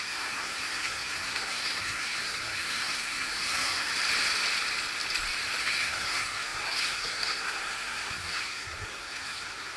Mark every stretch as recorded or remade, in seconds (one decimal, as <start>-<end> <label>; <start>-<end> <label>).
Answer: 0.0-3.9 remade; 3.9-5.6 recorded; 5.6-9.8 remade